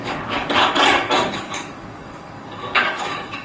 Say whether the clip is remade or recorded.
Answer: remade